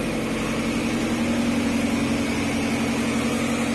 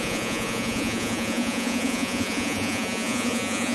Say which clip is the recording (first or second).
first